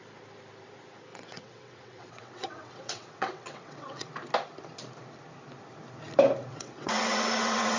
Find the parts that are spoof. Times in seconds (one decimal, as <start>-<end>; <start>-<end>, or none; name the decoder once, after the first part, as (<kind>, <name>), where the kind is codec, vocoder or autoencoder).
1.1-4.1 (vocoder, WaveNeXt); 6.5-7.8